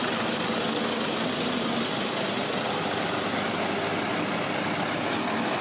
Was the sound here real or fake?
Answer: real